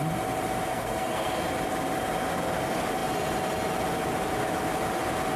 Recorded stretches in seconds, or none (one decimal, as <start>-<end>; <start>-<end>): 0.0-0.7; 1.4-5.4